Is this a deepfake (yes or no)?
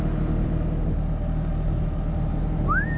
no